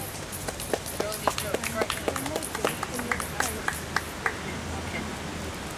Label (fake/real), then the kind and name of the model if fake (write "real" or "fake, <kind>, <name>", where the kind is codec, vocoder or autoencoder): real